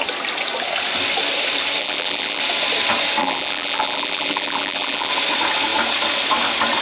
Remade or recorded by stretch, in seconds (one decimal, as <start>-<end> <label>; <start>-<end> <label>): 0.0-1.8 recorded; 1.8-2.4 remade; 2.4-3.2 recorded; 3.2-5.1 remade; 5.1-6.8 recorded